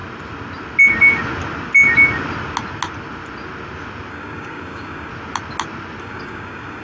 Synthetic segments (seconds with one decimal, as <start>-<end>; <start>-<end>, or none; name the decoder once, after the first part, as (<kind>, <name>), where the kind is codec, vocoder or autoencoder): 4.1-5.1 (codec, DAC); 6.0-6.8

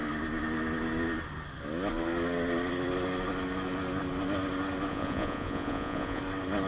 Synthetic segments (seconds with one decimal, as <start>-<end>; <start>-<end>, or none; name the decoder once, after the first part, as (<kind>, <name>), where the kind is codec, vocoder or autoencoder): 4.9-6.2 (vocoder, Vocos)

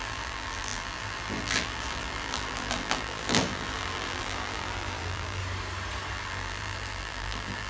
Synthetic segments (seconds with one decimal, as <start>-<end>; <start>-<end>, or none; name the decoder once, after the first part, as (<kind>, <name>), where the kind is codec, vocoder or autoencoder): 0.0-5.4 (vocoder, BigVGAN v2); 6.1-7.7

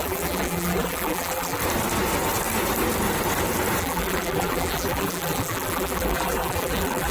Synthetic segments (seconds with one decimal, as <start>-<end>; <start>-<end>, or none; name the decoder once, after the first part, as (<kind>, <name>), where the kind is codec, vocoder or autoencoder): 0.0-1.6 (vocoder, BigVGAN v2); 3.8-7.1

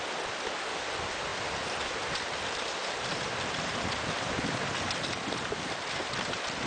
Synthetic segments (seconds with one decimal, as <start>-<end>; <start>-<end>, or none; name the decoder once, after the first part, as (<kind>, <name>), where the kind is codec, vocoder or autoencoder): none

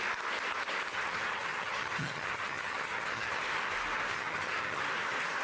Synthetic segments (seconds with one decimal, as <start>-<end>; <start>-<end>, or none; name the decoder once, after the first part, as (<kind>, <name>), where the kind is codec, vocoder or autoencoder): 0.9-3.4 (vocoder, HiFi-GAN); 4.1-4.8

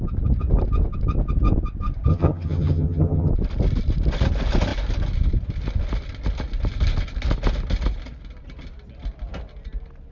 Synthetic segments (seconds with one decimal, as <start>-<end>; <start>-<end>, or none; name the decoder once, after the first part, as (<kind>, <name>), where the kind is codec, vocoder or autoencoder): 2.1-3.3 (vocoder, HiFi-GAN)